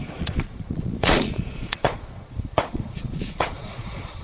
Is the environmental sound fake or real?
fake